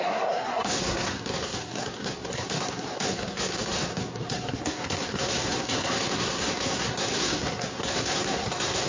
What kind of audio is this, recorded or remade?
remade